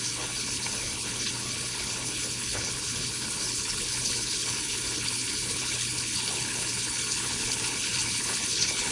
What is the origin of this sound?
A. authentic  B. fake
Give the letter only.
B